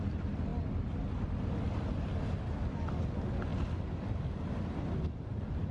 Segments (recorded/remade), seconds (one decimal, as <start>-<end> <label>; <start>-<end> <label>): 0.0-5.7 recorded